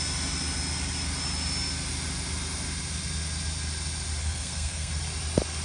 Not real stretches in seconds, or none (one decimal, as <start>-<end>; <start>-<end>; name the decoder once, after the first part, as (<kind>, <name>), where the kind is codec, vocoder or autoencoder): 4.2-4.9 (codec, SNAC)